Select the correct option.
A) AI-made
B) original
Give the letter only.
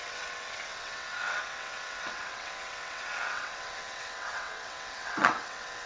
A